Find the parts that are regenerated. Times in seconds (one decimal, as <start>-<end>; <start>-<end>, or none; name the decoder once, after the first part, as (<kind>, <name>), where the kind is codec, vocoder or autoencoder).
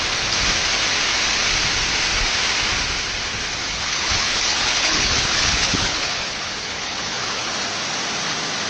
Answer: 3.6-7.5 (codec, HILCodec)